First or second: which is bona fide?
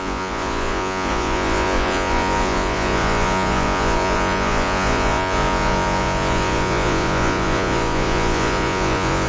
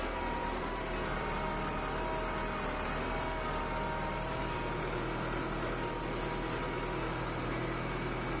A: second